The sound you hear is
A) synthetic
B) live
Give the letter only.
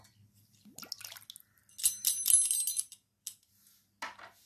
B